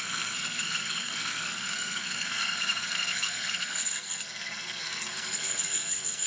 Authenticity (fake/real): fake